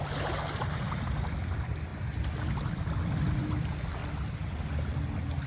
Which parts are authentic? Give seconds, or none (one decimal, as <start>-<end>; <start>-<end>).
4.0-5.5